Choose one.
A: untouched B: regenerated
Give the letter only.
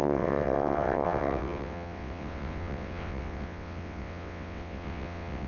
B